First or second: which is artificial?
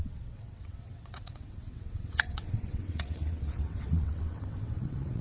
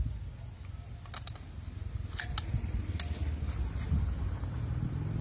first